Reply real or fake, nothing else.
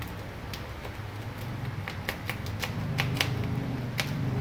real